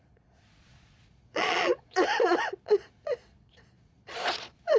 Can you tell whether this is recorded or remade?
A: remade